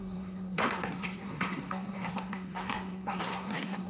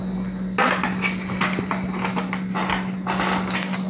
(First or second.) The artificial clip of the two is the first